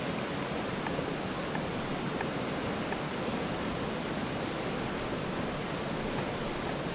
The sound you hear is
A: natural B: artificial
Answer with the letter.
A